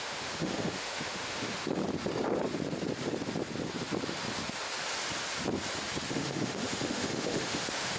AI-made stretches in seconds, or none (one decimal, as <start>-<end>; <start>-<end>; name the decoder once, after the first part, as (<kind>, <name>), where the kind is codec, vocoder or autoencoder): 0.0-1.8 (autoencoder, DAC-VAE); 6.1-8.0